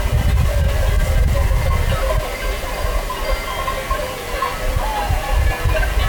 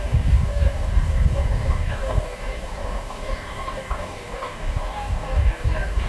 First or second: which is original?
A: first